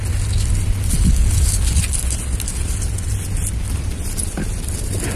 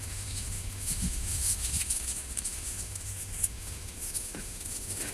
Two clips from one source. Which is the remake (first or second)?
second